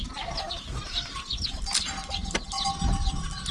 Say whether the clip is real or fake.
real